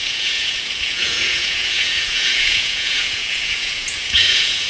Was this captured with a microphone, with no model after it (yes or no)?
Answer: no